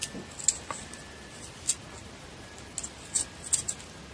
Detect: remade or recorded recorded